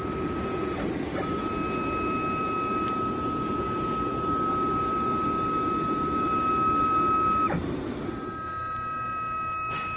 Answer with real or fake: real